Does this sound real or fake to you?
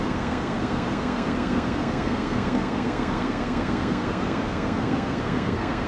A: fake